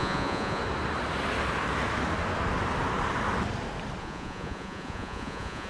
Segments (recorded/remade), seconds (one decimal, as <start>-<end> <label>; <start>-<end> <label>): 0.0-0.6 remade; 0.6-4.0 recorded; 4.0-5.7 remade